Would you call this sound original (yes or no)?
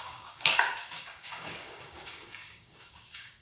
no